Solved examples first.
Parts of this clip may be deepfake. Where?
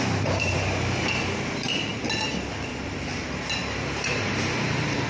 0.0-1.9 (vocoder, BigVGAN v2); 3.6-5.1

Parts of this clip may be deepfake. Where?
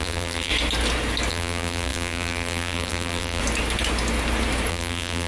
0.0-0.5 (vocoder, BigVGAN v2); 1.3-3.4; 4.7-5.3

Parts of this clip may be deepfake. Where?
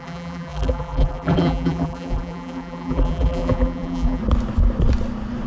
0.0-4.2 (vocoder, BigVGAN v2)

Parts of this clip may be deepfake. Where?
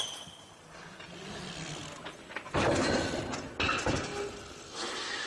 none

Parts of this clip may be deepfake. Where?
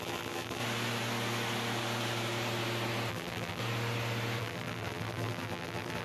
0.0-0.6 (vocoder, BigVGAN v2); 3.1-3.6; 4.4-6.0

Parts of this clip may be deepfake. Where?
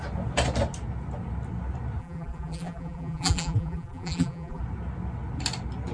2.0-4.6 (vocoder, BigVGAN v2)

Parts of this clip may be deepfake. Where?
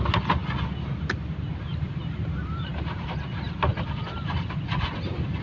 1.7-3.0 (vocoder, BigVGAN v2); 3.7-5.4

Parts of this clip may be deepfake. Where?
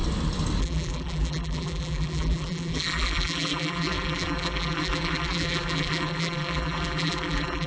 0.6-7.7 (vocoder, BigVGAN v2)